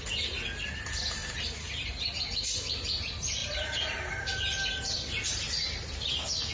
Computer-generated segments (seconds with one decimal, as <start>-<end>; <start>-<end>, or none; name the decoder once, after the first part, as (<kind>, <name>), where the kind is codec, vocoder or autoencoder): 1.2-2.0 (vocoder, BigVGAN v2)